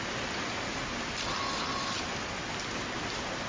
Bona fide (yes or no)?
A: yes